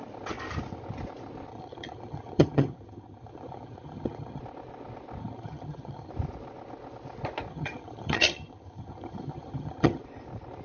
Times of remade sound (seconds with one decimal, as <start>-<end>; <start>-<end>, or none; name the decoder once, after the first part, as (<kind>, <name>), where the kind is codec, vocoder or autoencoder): 1.5-4.4 (vocoder, HiFi-GAN); 5.2-6.1; 7.5-10.0